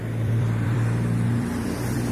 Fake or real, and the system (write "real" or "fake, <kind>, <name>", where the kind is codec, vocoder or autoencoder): fake, vocoder, BigVGAN v2